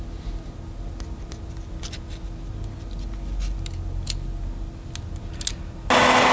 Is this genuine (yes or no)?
yes